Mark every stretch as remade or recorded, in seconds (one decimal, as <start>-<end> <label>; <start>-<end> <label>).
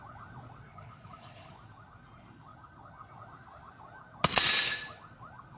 0.0-0.7 recorded; 0.7-1.5 remade; 1.5-5.6 recorded